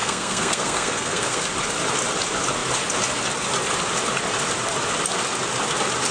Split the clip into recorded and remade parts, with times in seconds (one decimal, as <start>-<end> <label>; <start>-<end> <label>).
0.0-1.4 remade; 1.4-6.1 recorded